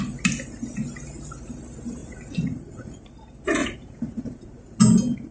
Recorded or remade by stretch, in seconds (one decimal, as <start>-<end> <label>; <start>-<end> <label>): 0.0-2.0 recorded; 2.0-3.1 remade; 3.1-3.6 recorded; 3.6-4.8 remade; 4.8-5.3 recorded